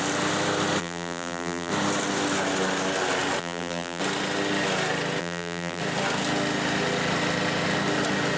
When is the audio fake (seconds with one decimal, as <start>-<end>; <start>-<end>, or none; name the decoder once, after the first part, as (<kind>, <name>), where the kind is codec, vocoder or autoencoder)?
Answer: 0.8-1.7 (vocoder, BigVGAN v2); 3.4-4.0; 5.2-5.8